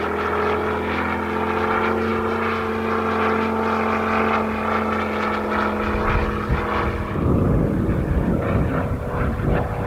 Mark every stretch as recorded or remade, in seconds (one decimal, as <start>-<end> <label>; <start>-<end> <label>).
0.0-9.9 recorded